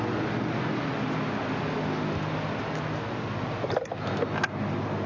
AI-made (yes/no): no